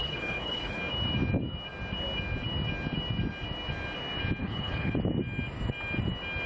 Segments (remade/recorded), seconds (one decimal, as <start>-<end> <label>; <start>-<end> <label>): 0.0-0.8 remade; 0.8-4.4 recorded; 4.4-4.9 remade; 4.9-6.5 recorded